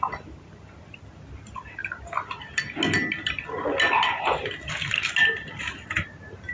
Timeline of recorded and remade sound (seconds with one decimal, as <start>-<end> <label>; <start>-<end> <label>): 0.0-6.5 recorded